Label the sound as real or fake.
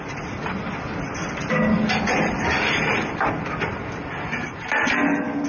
real